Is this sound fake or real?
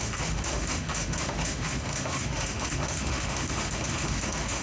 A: fake